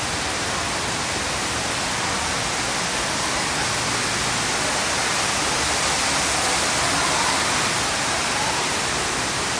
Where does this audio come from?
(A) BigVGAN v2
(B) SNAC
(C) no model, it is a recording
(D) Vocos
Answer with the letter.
C